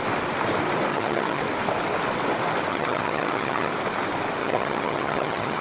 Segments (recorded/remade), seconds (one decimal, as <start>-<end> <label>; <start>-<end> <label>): 0.0-0.9 recorded; 0.9-1.4 remade; 1.4-2.7 recorded; 2.7-3.7 remade; 3.7-4.4 recorded; 4.4-5.6 remade